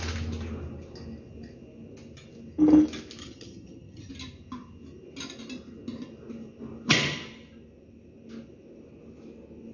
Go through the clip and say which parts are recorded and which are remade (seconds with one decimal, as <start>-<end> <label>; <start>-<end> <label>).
0.0-3.2 recorded; 3.2-4.1 remade; 4.1-9.7 recorded